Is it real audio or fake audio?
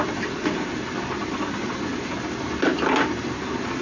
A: real